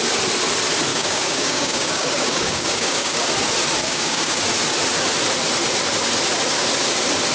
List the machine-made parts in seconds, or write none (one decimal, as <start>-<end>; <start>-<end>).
0.9-3.2; 3.8-4.4